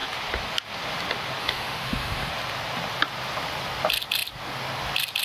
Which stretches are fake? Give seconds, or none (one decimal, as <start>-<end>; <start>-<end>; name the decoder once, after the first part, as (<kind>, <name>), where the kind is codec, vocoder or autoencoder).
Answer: 1.4-2.3 (autoencoder, DAC-VAE)